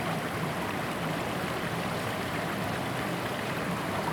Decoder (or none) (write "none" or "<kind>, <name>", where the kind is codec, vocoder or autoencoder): vocoder, BigVGAN v2